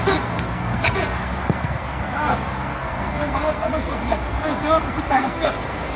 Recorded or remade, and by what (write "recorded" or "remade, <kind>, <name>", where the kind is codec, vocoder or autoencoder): remade, codec, SNAC